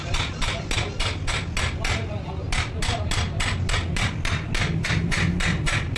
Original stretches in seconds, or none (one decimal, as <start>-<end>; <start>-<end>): 0.0-6.0